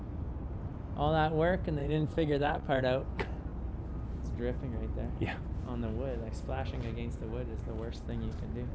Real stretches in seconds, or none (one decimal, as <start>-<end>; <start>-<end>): 0.0-1.8; 2.8-8.7